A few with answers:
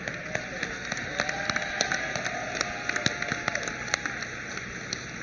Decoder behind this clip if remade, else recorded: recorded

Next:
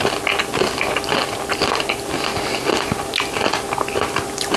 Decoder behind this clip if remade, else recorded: recorded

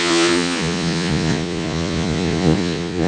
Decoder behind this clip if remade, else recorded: remade, vocoder, Vocos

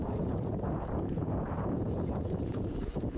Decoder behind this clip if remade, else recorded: remade, vocoder, Vocos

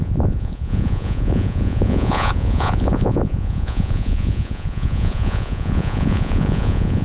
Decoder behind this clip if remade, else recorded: remade, vocoder, Vocos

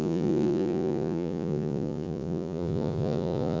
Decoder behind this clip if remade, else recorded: remade, vocoder, Vocos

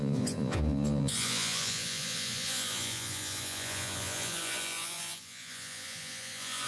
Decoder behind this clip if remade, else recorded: remade, vocoder, Vocos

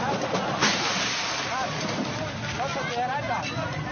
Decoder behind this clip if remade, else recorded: recorded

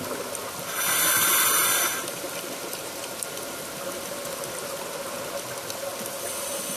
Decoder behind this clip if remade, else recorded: recorded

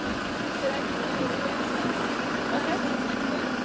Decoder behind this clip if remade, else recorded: remade, vocoder, Vocos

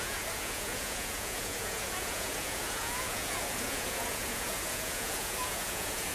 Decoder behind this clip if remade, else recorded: remade, vocoder, Vocos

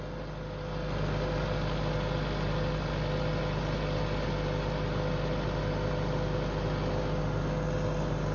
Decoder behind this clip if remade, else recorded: recorded